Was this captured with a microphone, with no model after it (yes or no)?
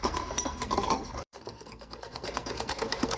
no